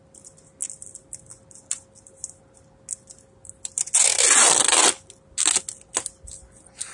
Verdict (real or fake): real